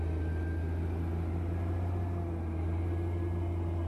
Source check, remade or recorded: recorded